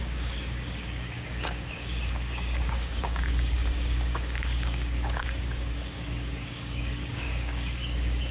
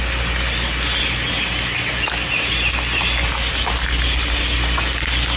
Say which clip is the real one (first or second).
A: second